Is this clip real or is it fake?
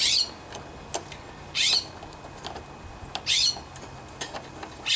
real